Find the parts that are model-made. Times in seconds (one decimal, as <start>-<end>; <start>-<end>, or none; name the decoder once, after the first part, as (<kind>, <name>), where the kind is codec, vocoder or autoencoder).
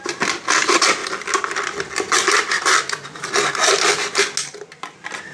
none